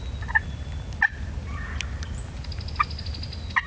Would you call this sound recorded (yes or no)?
yes